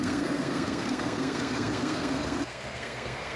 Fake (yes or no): yes